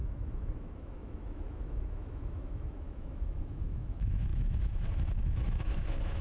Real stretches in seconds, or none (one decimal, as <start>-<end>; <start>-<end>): none